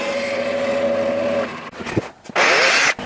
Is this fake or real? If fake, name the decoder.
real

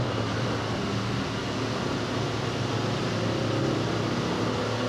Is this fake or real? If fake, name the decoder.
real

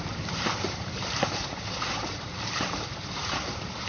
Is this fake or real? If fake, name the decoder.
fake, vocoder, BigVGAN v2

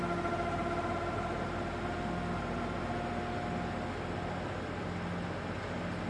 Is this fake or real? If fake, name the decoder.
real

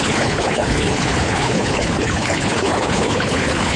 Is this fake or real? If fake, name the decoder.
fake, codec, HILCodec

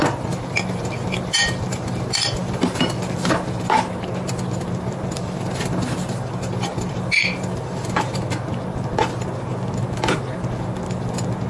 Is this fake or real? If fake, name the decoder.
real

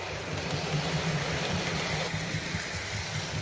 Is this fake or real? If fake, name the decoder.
real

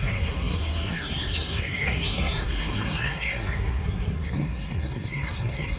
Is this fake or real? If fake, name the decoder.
fake, codec, SNAC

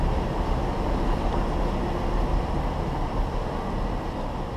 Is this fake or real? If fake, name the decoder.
real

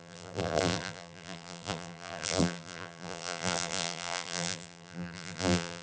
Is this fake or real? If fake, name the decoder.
fake, vocoder, BigVGAN v2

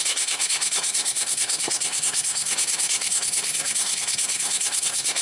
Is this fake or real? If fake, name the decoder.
fake, codec, SNAC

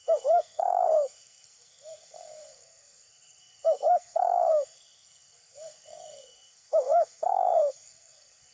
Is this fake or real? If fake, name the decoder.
fake, codec, SNAC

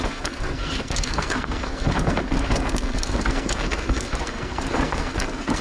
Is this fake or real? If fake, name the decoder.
fake, codec, SNAC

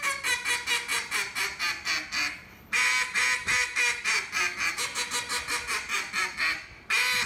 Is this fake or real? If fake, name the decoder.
real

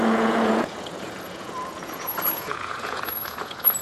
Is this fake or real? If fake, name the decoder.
fake, vocoder, Vocos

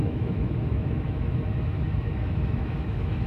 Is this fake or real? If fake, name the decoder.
fake, autoencoder, DAC-VAE